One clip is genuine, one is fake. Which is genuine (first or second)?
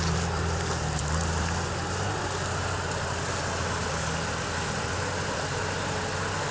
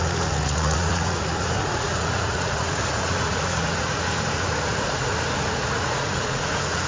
first